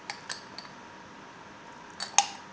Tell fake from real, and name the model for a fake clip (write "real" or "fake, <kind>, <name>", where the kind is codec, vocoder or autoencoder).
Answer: real